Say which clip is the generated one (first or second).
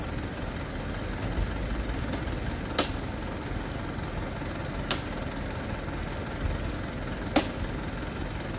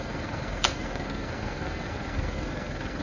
second